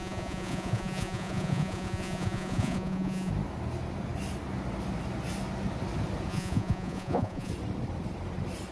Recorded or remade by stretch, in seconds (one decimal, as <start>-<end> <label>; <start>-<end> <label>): 0.0-3.3 remade; 3.3-6.3 recorded; 6.3-7.5 remade; 7.5-8.7 recorded